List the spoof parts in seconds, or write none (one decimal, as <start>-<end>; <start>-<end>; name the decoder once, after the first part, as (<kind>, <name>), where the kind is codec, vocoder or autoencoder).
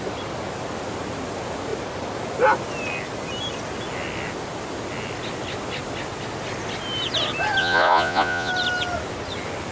7.6-8.5 (vocoder, Vocos)